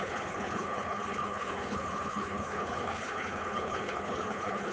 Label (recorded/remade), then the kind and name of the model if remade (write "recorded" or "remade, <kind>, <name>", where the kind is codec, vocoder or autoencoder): remade, codec, HILCodec